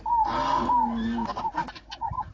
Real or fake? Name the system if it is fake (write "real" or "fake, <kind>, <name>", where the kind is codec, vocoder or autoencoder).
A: real